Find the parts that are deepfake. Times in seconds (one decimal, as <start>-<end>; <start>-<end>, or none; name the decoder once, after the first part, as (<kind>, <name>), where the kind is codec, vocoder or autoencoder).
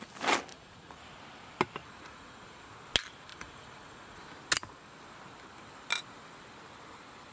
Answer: 0.5-1.2 (vocoder, Vocos); 1.8-2.7; 3.3-4.2